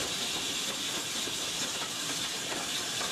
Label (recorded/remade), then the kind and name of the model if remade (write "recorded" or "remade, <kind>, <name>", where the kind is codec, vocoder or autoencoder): recorded